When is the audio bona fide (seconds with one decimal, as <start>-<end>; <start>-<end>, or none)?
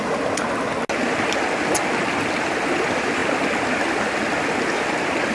0.0-5.3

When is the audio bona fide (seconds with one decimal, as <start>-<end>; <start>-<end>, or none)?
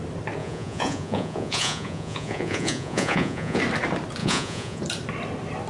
0.0-0.4; 3.6-4.2; 4.8-5.7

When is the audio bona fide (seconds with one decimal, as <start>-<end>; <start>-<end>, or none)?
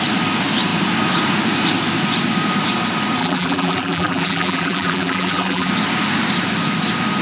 0.0-3.2; 5.7-7.2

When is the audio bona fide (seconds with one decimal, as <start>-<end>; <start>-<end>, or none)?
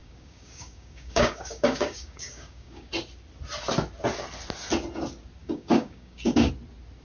2.9-5.4; 6.5-7.0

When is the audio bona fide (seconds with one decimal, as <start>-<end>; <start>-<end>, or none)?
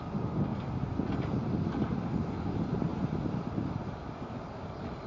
0.0-5.1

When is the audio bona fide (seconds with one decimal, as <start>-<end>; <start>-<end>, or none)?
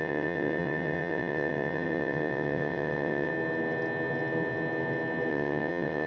3.3-5.3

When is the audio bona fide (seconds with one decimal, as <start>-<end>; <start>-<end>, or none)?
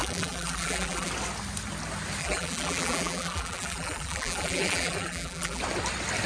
1.1-2.2; 5.6-6.3